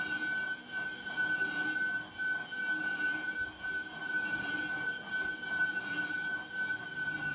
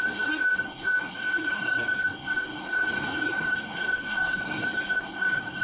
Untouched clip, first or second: first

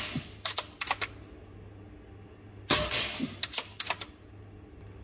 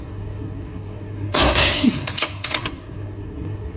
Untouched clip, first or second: first